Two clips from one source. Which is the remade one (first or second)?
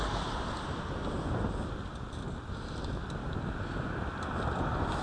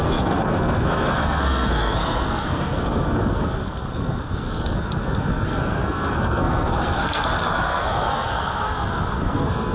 second